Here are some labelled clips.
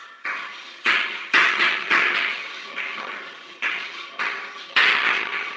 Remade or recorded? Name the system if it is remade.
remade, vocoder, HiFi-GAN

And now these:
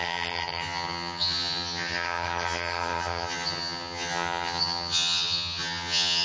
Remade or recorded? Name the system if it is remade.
remade, vocoder, HiFi-GAN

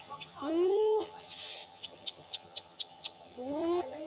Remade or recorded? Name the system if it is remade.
remade, vocoder, HiFi-GAN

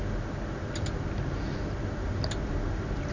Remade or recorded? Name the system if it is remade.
recorded